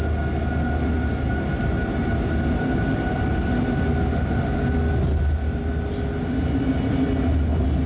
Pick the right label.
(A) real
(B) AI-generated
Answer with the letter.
A